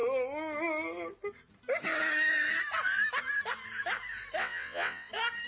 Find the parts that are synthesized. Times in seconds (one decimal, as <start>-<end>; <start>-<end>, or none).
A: 4.4-5.1